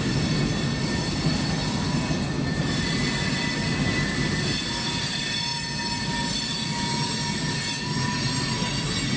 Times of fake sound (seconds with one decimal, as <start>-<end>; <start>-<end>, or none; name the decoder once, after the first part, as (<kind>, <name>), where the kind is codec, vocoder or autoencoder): none